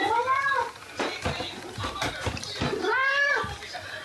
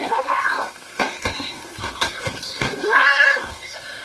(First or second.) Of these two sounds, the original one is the first